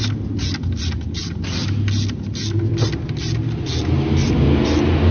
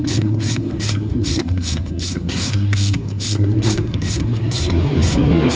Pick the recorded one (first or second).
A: first